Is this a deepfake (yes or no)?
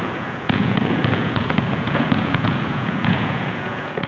yes